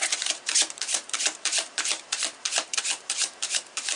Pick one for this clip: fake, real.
fake